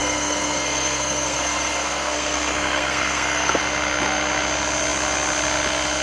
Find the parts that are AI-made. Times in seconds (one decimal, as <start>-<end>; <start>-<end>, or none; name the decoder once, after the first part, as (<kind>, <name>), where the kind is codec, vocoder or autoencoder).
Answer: 0.0-3.6 (codec, SNAC)